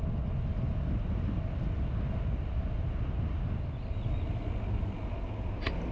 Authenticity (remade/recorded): recorded